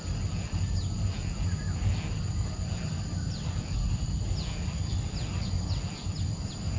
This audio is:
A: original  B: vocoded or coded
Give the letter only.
A